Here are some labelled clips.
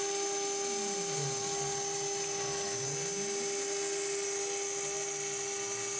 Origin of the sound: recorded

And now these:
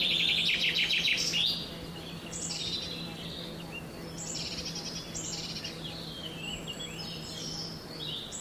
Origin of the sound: recorded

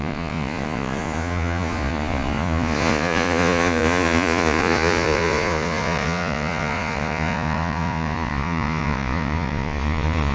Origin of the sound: remade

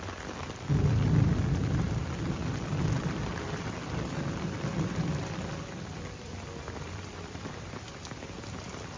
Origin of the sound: remade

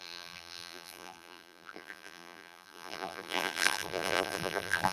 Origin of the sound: remade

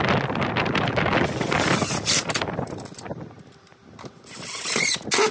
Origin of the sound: recorded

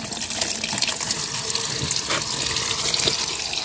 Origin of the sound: recorded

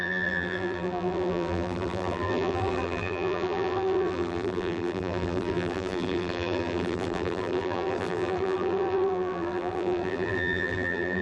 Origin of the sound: remade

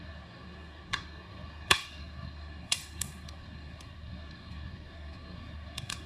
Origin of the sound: remade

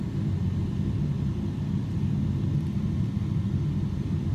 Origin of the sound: recorded